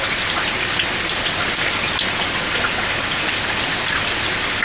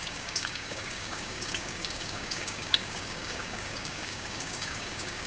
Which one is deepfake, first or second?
second